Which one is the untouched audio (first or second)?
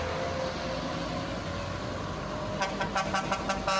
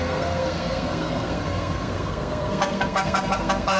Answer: first